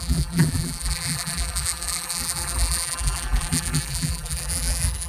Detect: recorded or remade remade